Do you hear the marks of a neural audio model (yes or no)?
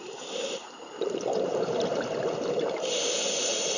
yes